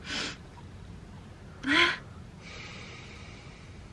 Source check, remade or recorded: recorded